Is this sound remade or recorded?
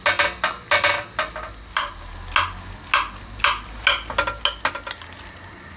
recorded